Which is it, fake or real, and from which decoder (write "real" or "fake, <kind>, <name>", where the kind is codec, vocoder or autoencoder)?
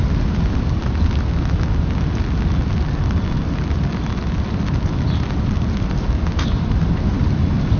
real